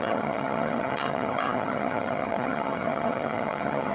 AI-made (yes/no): yes